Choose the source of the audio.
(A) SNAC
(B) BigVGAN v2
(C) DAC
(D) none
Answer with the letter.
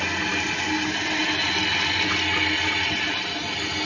D